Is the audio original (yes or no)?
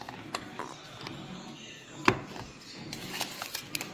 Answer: yes